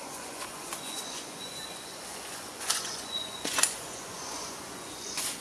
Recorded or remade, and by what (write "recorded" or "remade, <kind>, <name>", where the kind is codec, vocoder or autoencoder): remade, vocoder, Vocos